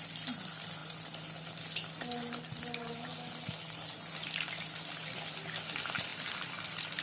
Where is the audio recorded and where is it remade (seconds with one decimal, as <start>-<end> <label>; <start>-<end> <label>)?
0.0-6.1 recorded; 6.1-7.0 remade